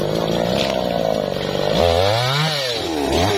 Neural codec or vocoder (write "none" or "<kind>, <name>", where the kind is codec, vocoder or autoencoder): none